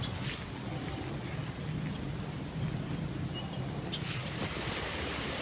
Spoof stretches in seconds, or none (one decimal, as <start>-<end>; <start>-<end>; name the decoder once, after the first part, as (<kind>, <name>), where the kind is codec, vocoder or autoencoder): none